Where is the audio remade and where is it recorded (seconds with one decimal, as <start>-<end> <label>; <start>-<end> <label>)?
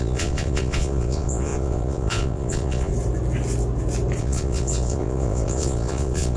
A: 0.0-2.9 remade; 2.9-4.2 recorded; 4.2-6.4 remade